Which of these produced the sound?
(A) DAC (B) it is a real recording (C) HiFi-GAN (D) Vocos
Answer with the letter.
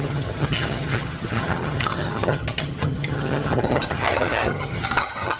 C